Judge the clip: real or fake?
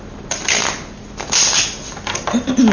real